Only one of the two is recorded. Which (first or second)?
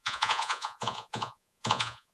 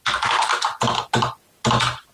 second